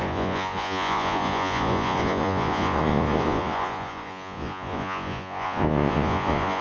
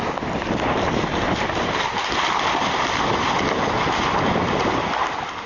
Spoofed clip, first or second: first